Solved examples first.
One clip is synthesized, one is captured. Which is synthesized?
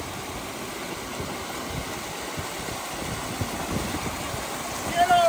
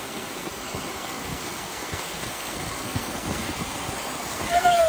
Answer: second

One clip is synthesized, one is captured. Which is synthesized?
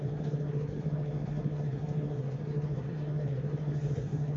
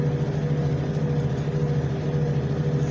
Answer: first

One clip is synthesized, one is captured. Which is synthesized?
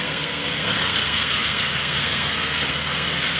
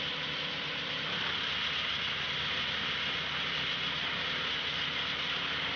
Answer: first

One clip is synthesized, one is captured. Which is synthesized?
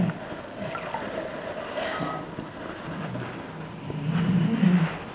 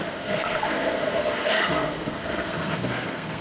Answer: second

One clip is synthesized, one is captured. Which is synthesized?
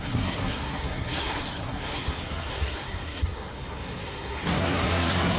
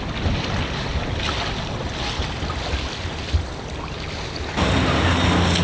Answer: first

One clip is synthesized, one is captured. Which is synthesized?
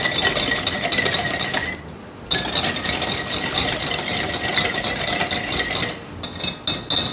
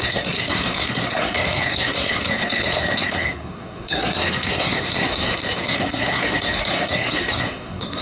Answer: second